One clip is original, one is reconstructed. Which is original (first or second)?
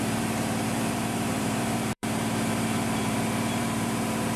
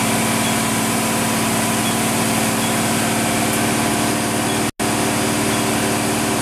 second